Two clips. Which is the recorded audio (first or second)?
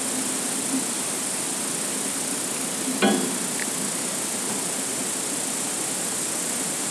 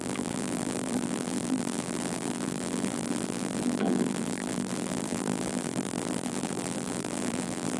first